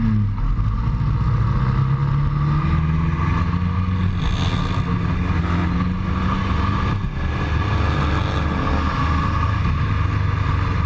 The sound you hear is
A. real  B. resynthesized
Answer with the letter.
A